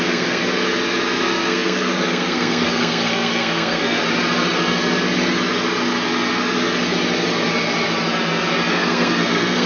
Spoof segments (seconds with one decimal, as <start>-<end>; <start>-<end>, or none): 0.0-0.4; 1.2-4.0; 8.7-9.7